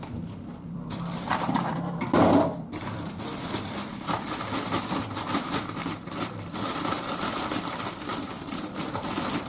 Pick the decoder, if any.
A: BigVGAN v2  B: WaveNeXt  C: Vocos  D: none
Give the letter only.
A